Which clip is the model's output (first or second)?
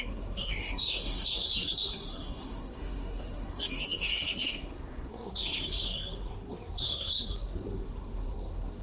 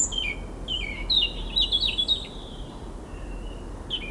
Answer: first